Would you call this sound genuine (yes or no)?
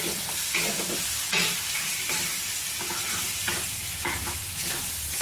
yes